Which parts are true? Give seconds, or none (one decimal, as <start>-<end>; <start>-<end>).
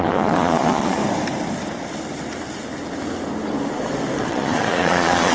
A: 1.0-4.2